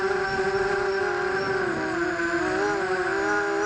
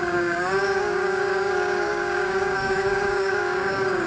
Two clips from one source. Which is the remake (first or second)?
second